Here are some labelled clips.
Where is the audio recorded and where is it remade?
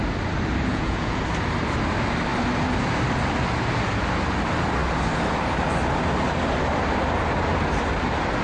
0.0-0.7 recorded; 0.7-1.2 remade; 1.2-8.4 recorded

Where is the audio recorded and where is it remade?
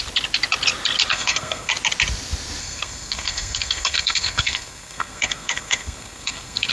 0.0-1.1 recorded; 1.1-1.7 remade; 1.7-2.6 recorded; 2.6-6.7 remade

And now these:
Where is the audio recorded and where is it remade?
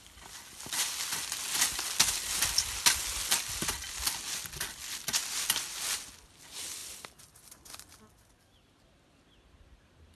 0.0-10.1 recorded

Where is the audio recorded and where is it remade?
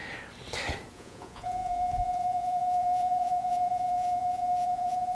0.0-0.9 recorded; 0.9-5.1 remade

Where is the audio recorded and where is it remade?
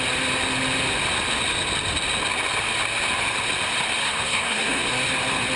0.0-4.0 recorded; 4.0-4.9 remade; 4.9-5.6 recorded